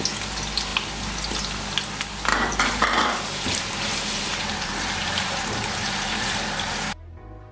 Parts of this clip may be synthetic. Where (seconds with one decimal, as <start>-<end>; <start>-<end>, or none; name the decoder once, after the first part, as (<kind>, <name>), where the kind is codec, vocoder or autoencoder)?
2.3-6.3 (vocoder, BigVGAN v2)